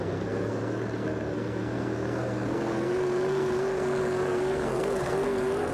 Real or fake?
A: fake